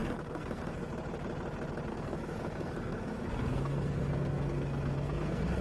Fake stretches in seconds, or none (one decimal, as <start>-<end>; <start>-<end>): 0.0-0.9; 1.9-5.6